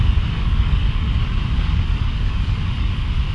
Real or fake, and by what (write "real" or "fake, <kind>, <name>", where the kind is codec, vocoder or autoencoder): fake, codec, DAC